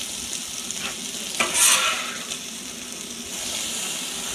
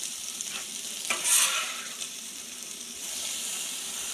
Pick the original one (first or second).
first